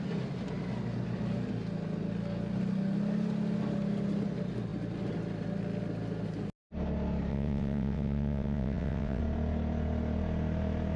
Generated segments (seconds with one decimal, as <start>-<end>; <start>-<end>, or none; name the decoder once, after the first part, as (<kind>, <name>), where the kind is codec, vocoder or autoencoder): 7.3-9.2 (vocoder, WaveNeXt)